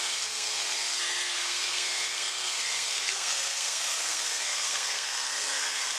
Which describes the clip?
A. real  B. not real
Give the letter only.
B